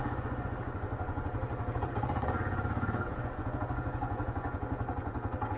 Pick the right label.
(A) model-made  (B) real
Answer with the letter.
A